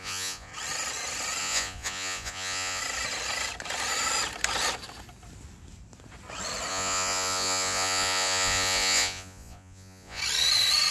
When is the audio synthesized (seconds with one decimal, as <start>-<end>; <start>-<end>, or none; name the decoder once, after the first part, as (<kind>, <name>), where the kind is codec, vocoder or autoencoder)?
0.0-0.5 (vocoder, Vocos); 1.4-2.8; 6.7-10.2